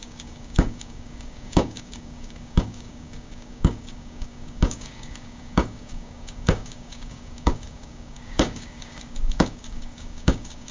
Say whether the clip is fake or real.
fake